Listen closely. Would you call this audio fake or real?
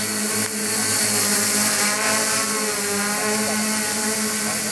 real